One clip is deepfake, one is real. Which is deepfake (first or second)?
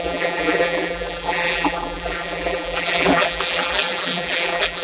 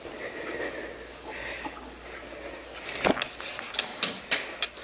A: first